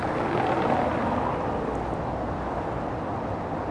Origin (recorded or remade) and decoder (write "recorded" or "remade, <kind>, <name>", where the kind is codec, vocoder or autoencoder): recorded